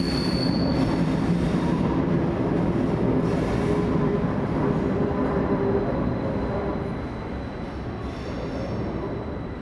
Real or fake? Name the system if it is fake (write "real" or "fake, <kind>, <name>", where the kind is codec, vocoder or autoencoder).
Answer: real